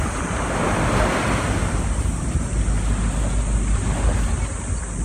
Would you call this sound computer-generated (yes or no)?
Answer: no